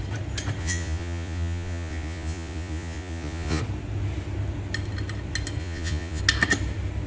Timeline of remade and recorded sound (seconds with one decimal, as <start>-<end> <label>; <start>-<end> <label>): 0.0-0.6 recorded; 0.6-3.6 remade; 3.6-5.6 recorded; 5.6-6.2 remade; 6.2-7.1 recorded